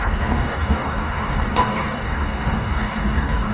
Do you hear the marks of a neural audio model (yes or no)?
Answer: yes